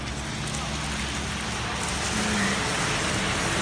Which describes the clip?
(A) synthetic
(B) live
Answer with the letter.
B